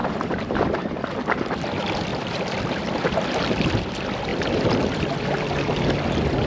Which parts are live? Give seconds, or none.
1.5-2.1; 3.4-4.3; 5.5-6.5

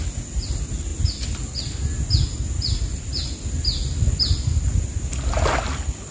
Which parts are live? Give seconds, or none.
0.0-6.1